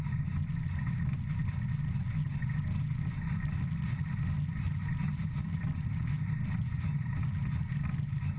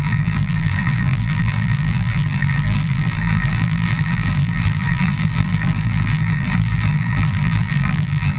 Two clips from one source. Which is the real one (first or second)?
first